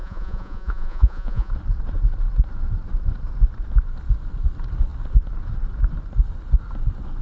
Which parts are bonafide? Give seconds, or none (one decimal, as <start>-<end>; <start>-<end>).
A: 1.5-7.2